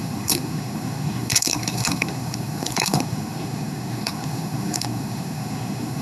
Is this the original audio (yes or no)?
no